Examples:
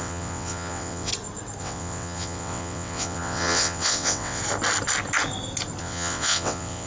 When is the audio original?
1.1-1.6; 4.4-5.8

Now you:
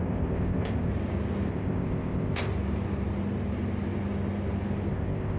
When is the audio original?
0.9-1.5; 2.5-4.9

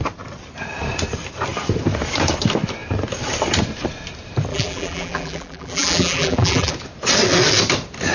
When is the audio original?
0.0-4.5; 6.7-8.1

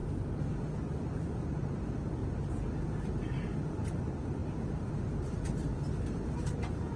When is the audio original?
0.0-1.5; 4.4-4.9

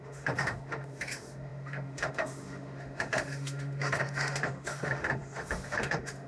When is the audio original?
none